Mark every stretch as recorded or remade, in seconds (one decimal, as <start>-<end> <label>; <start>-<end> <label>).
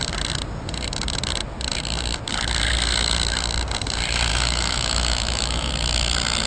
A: 0.0-4.3 recorded; 4.3-5.7 remade; 5.7-6.5 recorded